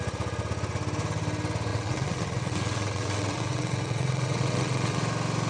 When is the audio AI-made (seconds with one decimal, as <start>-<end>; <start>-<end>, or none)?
1.7-5.0